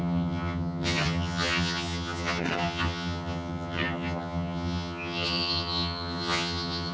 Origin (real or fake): fake